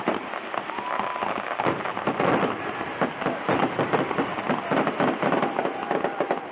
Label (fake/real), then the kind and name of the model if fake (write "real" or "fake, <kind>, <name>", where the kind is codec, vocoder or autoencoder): real